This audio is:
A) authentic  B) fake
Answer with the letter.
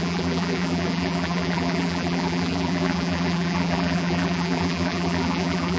B